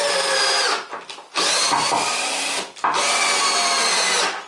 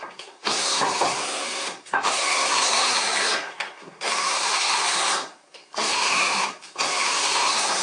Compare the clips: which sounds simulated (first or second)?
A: second